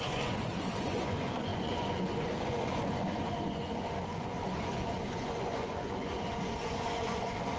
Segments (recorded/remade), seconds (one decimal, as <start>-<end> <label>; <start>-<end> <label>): 0.0-7.6 remade

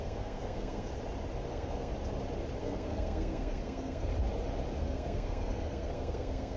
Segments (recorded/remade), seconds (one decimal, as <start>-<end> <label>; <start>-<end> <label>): 0.0-0.9 remade; 0.9-1.5 recorded; 1.5-1.9 remade; 1.9-2.6 recorded; 2.6-4.1 remade; 4.1-4.8 recorded; 4.8-6.6 remade

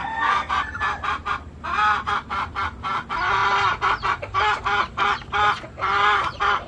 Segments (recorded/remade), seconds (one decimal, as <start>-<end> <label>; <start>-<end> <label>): 0.0-0.5 remade; 0.5-6.7 recorded